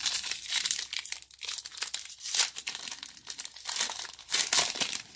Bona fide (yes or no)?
yes